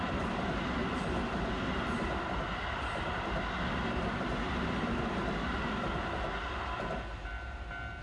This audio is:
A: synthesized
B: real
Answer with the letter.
B